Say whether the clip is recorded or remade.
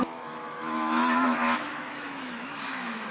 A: remade